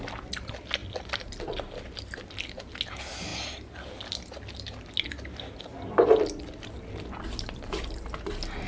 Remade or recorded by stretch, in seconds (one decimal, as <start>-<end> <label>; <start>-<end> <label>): 0.0-8.7 recorded

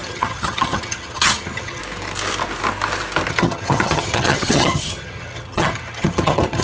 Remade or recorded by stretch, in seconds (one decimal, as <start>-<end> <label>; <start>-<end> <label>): 0.0-1.8 remade; 1.8-3.3 recorded; 3.3-6.6 remade

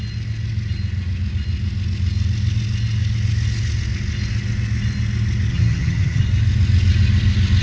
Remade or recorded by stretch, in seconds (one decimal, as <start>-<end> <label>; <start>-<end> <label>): 0.0-5.5 recorded; 5.5-6.2 remade; 6.2-7.6 recorded